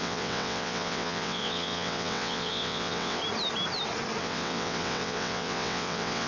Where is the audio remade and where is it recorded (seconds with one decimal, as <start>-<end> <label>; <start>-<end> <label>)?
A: 0.0-3.2 remade; 3.2-4.2 recorded; 4.2-6.3 remade